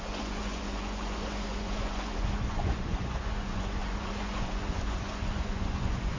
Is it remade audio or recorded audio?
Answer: remade